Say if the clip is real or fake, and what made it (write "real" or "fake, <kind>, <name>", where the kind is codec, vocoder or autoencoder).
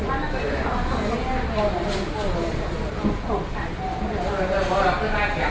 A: real